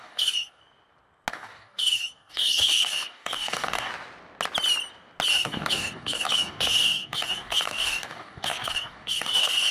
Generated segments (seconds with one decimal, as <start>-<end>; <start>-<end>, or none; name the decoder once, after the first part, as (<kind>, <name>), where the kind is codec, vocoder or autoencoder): 0.0-0.6 (codec, DAC); 1.3-3.9; 5.3-9.7